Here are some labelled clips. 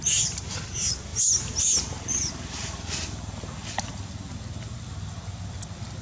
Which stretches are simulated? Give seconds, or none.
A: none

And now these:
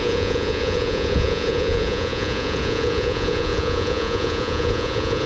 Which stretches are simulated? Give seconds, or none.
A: 0.0-5.3 (vocoder, Vocos)

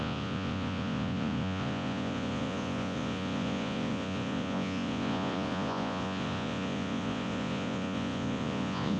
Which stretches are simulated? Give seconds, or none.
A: 0.0-9.0 (vocoder, Vocos)

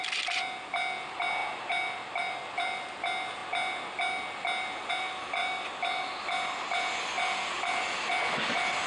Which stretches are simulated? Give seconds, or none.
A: none

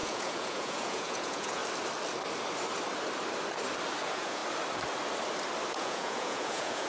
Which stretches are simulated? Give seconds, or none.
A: 0.0-1.6 (vocoder, Vocos); 4.0-4.4; 5.7-6.9

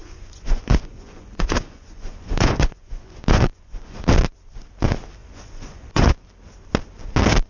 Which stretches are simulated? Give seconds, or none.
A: 0.0-4.1 (vocoder, Vocos); 5.2-6.1

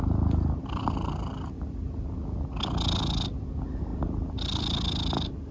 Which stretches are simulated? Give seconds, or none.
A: none